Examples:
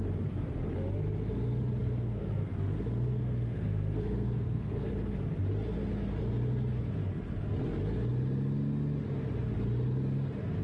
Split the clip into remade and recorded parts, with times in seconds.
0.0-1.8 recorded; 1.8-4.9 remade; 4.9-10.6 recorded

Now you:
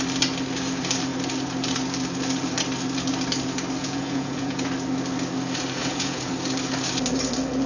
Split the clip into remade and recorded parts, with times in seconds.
0.0-3.8 recorded; 3.8-4.6 remade; 4.6-5.8 recorded; 5.8-6.3 remade; 6.3-7.7 recorded

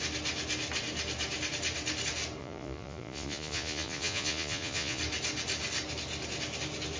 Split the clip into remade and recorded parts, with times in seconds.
0.0-2.4 recorded; 2.4-5.0 remade; 5.0-7.0 recorded

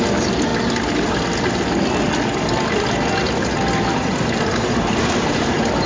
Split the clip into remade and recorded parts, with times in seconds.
0.0-0.5 remade; 0.5-4.0 recorded; 4.0-5.9 remade

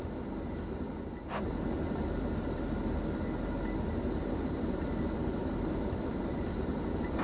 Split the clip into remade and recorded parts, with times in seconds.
0.0-5.3 recorded; 5.3-7.2 remade

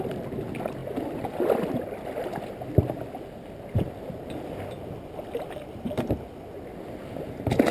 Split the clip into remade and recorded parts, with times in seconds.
0.0-7.7 recorded

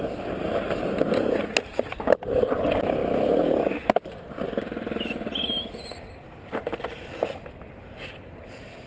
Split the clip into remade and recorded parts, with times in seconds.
0.0-8.9 recorded

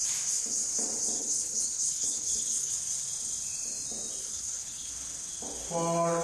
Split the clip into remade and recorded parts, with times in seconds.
0.0-1.2 recorded; 1.2-2.7 remade; 2.7-4.2 recorded; 4.2-4.9 remade; 4.9-6.2 recorded